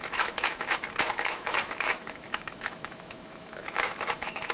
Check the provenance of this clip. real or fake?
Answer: fake